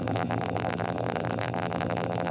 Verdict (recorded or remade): remade